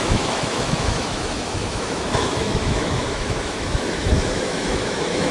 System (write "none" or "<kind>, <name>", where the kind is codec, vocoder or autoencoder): autoencoder, DAC-VAE